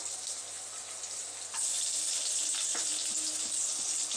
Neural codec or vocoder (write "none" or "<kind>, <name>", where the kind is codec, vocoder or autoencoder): none